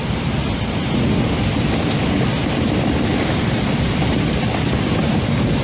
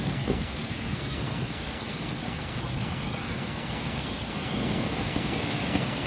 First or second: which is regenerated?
second